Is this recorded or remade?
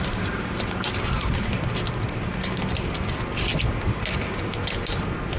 recorded